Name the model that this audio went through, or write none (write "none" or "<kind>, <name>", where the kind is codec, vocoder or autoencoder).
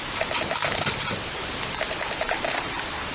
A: none